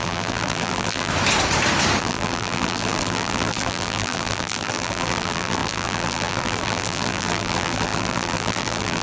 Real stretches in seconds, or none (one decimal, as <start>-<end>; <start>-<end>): 1.1-2.0